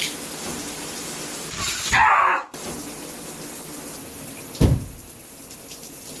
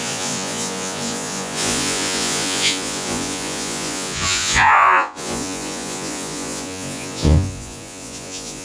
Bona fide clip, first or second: first